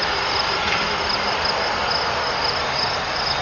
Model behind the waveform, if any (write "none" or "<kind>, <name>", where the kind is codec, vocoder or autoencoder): none